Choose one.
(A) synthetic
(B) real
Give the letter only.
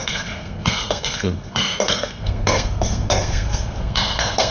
A